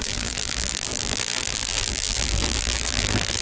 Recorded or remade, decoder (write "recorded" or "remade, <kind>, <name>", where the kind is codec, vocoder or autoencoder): remade, vocoder, BigVGAN v2